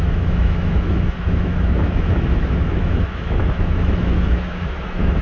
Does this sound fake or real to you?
fake